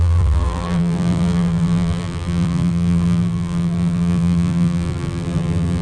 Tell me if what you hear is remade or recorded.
remade